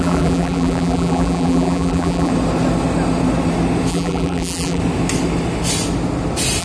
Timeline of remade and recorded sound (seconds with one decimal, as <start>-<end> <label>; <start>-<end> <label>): 0.0-2.3 remade; 2.3-3.9 recorded; 3.9-4.8 remade; 4.8-6.6 recorded